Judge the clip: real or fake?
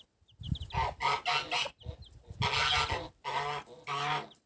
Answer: real